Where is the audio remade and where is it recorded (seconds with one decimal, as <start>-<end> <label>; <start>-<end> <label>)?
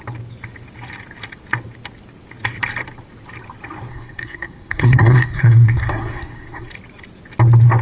0.0-3.9 recorded; 3.9-6.7 remade; 6.7-7.8 recorded